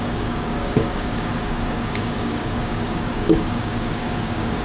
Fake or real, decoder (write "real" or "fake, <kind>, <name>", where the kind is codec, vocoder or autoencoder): fake, codec, DAC